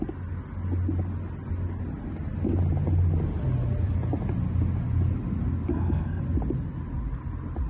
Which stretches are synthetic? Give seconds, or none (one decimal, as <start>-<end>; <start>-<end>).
5.7-6.2